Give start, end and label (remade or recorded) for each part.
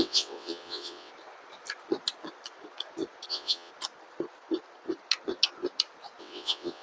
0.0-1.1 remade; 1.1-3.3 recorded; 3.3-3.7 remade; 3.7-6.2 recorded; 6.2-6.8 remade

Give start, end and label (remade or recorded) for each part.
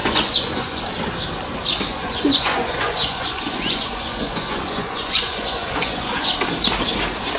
0.0-0.8 remade; 0.8-1.9 recorded; 1.9-6.3 remade; 6.3-7.4 recorded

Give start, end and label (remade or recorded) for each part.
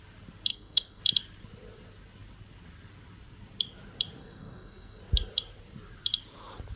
0.0-0.5 recorded; 0.5-1.0 remade; 1.0-4.2 recorded; 4.2-5.0 remade; 5.0-6.8 recorded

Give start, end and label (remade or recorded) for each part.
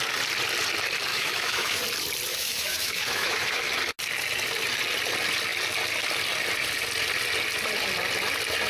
0.0-1.1 recorded; 1.1-1.8 remade; 1.8-2.3 recorded; 2.3-3.7 remade; 3.7-8.7 recorded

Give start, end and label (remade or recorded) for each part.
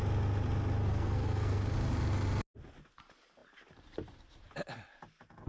0.0-0.8 recorded; 0.8-1.6 remade; 1.6-5.5 recorded